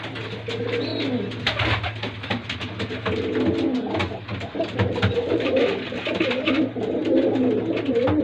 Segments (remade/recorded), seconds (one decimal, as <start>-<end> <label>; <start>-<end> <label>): 0.0-4.0 recorded; 4.0-6.1 remade; 6.1-8.2 recorded